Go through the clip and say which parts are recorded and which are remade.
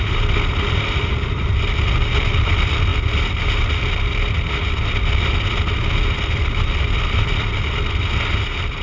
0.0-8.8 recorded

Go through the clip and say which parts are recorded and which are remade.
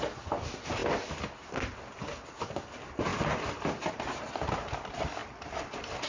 0.0-6.1 recorded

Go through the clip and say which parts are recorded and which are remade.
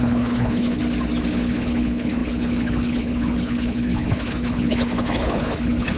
0.0-0.8 remade; 0.8-1.3 recorded; 1.3-6.0 remade